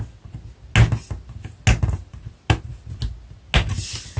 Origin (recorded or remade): recorded